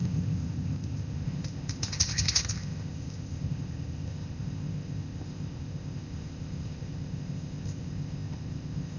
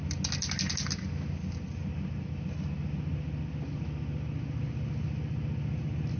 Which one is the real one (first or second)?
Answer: second